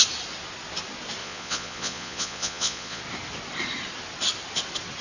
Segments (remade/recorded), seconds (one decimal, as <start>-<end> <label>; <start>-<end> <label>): 0.0-1.2 recorded; 1.2-3.0 remade; 3.0-5.0 recorded